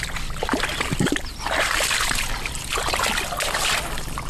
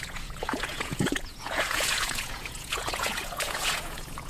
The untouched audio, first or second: first